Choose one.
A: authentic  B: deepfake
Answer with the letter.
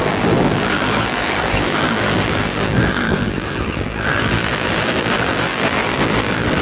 B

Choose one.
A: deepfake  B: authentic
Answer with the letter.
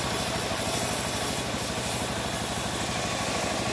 B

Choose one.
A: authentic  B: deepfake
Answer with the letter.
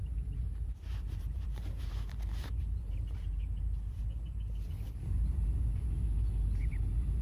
B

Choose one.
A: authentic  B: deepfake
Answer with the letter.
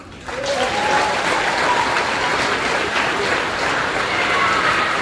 B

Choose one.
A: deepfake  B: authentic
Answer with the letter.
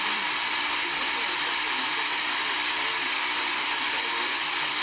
A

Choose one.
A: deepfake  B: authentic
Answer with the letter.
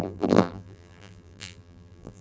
A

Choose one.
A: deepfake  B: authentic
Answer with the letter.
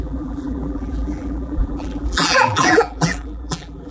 A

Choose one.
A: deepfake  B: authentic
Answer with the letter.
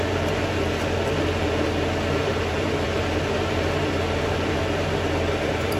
A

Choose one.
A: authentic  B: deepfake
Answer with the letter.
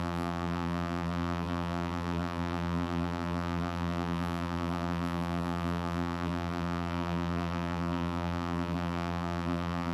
B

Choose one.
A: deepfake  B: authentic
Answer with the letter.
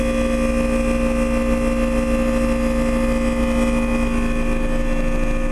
B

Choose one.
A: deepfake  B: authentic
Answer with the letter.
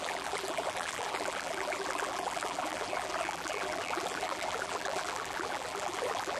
A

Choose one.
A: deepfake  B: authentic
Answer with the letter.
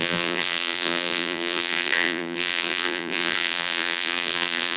A